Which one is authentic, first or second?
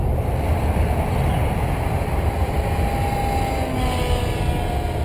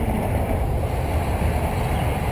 first